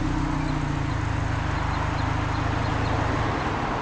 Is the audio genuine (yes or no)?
yes